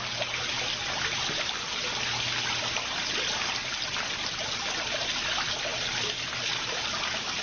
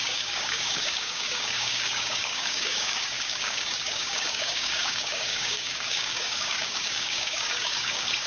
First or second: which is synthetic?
second